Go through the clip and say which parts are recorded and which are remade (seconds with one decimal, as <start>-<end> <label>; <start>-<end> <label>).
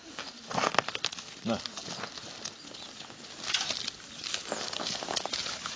0.0-5.8 recorded